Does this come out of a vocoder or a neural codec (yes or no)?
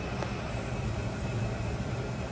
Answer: no